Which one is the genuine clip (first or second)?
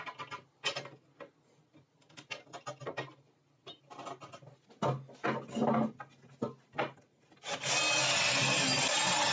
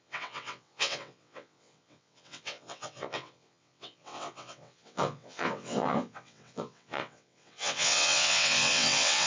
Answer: first